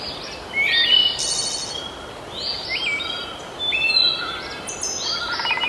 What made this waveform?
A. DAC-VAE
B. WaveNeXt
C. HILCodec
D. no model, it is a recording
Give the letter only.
D